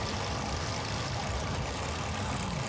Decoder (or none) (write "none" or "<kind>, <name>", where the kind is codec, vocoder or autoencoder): none